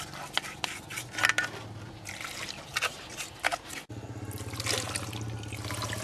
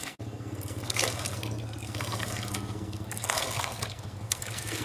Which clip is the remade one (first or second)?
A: second